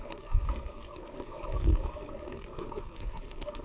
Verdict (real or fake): fake